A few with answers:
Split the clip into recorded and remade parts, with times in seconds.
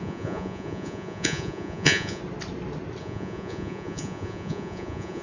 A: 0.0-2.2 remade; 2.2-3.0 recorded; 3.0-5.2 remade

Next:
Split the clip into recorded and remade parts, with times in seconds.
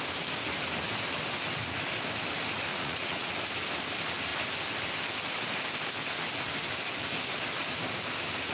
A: 0.0-2.7 recorded; 2.7-3.3 remade; 3.3-8.5 recorded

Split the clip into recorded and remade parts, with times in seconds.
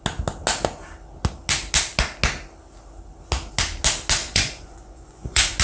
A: 0.0-4.2 recorded; 4.2-5.6 remade